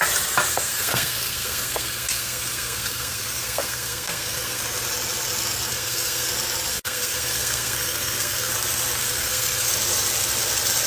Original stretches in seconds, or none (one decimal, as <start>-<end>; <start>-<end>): 0.0-0.5; 4.6-5.7; 6.3-6.7; 8.5-9.0; 9.7-10.9